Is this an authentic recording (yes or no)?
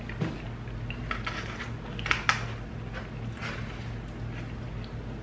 yes